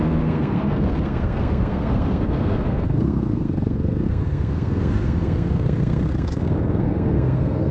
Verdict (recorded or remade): remade